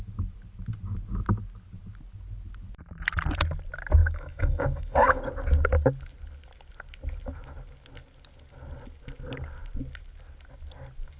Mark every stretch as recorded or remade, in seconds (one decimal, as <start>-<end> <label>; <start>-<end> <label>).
0.0-4.0 recorded; 4.0-5.2 remade; 5.2-11.2 recorded

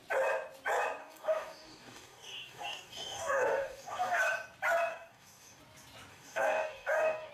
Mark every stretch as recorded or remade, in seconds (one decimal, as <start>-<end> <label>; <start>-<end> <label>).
0.0-1.0 recorded; 1.0-4.2 remade; 4.2-4.9 recorded; 4.9-5.6 remade; 5.6-6.1 recorded; 6.1-7.3 remade

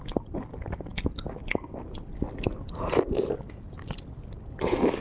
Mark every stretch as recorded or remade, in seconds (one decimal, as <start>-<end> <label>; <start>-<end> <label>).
0.0-5.0 recorded

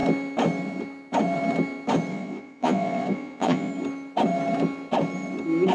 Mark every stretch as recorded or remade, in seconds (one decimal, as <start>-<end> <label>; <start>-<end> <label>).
0.0-2.1 recorded; 2.1-3.7 remade; 3.7-5.7 recorded